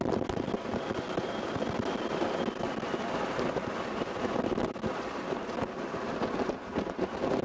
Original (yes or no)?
yes